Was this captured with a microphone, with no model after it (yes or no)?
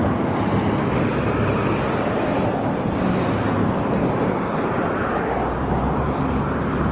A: yes